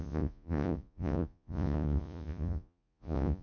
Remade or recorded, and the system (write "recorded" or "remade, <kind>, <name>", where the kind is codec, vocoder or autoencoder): remade, vocoder, Vocos